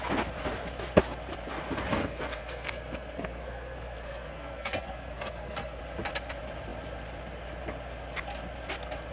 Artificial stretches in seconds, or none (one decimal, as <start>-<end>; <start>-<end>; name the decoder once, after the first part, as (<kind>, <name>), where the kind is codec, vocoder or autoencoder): 1.9-5.8 (codec, SNAC)